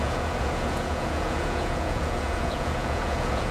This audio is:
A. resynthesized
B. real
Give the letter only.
A